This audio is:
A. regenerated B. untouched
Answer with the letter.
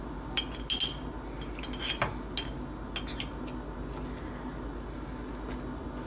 B